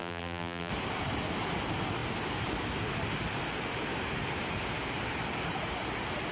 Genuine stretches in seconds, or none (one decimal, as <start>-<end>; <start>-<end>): 0.7-6.3